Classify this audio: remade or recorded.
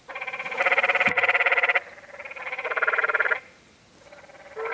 recorded